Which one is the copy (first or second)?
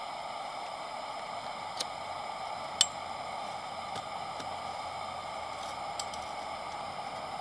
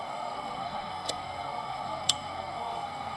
second